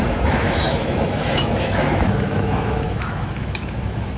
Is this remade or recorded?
remade